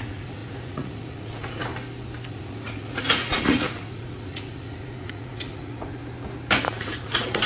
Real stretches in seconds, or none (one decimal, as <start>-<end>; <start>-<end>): 1.7-2.3; 6.0-6.6